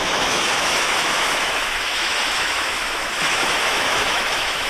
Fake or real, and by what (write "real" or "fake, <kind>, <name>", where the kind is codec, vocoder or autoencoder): fake, autoencoder, DAC-VAE